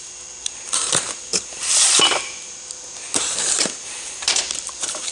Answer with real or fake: fake